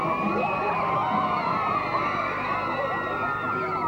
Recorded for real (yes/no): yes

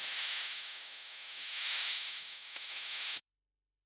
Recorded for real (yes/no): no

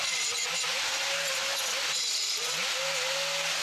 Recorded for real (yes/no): yes